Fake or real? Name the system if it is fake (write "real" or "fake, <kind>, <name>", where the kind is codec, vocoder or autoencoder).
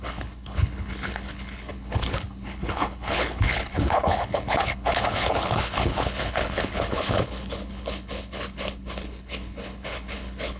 fake, codec, HILCodec